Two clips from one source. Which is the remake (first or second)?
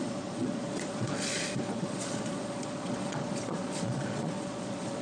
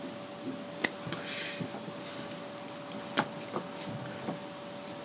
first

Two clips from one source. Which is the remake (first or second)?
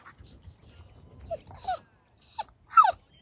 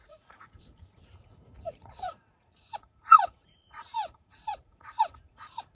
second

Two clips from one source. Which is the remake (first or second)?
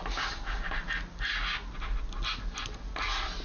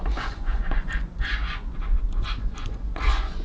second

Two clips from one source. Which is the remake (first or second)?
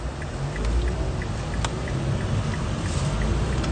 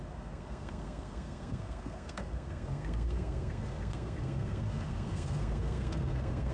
second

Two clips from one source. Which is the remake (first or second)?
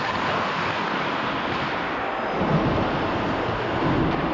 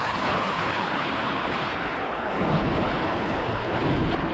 second